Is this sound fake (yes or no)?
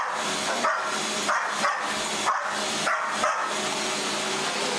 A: no